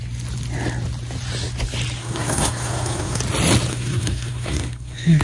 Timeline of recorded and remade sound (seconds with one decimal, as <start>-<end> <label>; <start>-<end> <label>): 0.0-2.0 recorded; 2.0-3.2 remade; 3.2-3.7 recorded; 3.7-5.2 remade